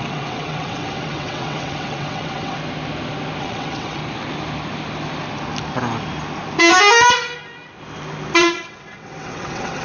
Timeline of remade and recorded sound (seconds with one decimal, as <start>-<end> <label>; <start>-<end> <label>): 0.0-2.6 remade; 2.6-3.4 recorded; 3.4-4.0 remade; 4.0-8.4 recorded; 8.4-9.8 remade